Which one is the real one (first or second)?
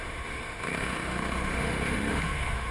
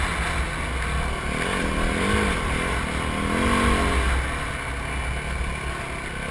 second